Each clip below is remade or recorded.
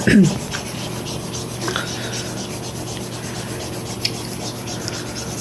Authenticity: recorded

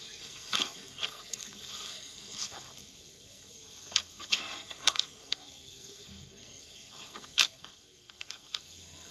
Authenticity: remade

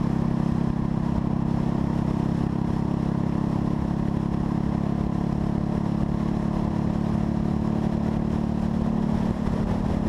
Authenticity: recorded